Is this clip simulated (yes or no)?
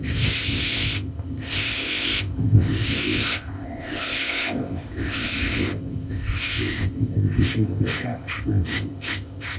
yes